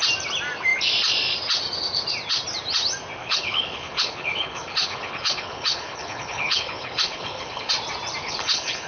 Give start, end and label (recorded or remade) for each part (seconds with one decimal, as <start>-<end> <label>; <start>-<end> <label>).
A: 0.0-3.2 recorded; 3.2-7.7 remade; 7.7-8.2 recorded; 8.2-8.9 remade